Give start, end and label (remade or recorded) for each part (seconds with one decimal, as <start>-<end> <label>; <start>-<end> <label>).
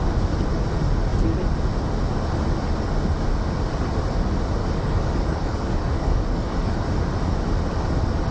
0.0-4.6 recorded; 4.6-6.7 remade; 6.7-8.3 recorded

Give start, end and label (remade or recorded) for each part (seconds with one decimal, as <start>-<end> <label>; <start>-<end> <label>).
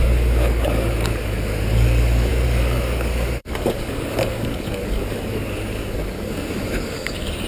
0.0-7.5 remade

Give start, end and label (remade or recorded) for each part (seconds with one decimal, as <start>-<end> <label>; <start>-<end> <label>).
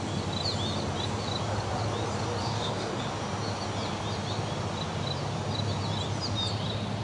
0.0-2.4 recorded; 2.4-3.0 remade; 3.0-7.0 recorded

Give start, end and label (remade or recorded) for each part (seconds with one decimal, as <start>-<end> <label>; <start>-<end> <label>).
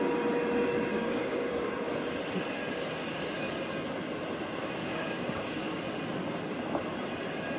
0.0-0.9 recorded; 0.9-1.7 remade; 1.7-4.8 recorded; 4.8-5.8 remade; 5.8-7.6 recorded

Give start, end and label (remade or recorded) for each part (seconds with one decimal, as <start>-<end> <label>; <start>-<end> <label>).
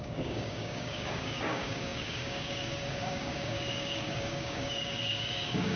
0.0-5.8 remade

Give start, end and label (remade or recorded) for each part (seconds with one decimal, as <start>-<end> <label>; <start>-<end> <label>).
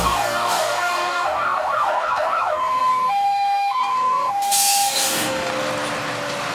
0.0-5.5 remade; 5.5-6.5 recorded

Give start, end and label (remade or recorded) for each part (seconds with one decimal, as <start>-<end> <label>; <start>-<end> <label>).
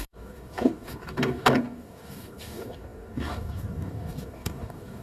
0.0-5.0 remade